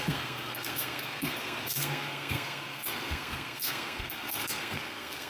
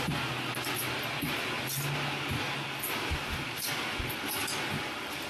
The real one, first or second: second